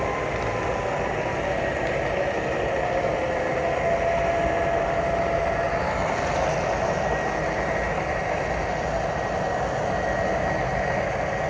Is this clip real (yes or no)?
yes